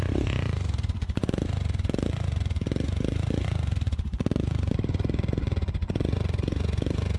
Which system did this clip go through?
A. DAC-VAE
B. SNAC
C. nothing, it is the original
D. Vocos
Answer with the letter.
D